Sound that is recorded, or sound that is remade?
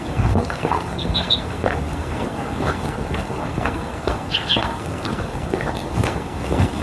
remade